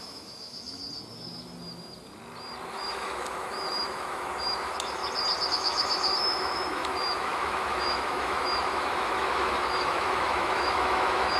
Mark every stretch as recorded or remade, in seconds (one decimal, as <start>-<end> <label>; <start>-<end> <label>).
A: 0.0-0.8 remade; 0.8-2.7 recorded; 2.7-5.0 remade; 5.0-5.5 recorded; 5.5-11.4 remade